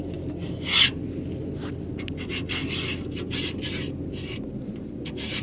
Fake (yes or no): no